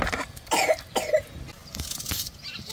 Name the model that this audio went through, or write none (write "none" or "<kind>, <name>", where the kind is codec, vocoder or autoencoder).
none